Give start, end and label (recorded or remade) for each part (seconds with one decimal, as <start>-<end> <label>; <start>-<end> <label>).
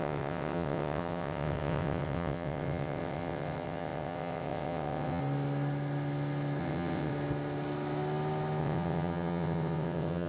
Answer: 0.0-5.2 remade; 5.2-6.6 recorded; 6.6-7.1 remade; 7.1-8.6 recorded; 8.6-10.3 remade